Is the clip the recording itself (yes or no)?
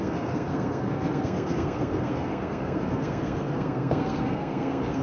no